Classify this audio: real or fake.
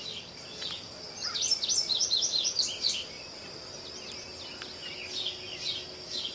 real